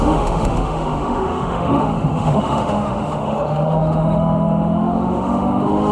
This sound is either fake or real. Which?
fake